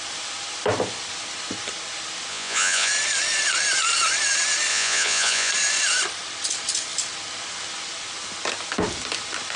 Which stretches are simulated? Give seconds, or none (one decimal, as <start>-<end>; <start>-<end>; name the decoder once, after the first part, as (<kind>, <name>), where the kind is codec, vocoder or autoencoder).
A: 2.3-2.9 (vocoder, Vocos); 4.7-5.5